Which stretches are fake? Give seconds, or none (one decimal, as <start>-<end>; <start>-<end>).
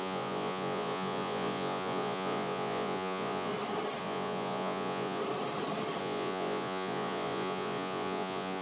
0.0-3.5; 4.0-5.2; 6.0-8.6